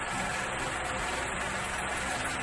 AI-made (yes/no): no